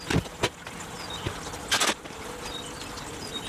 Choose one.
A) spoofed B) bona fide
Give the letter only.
B